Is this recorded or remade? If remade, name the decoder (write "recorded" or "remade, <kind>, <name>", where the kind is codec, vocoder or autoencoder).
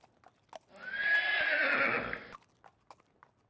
recorded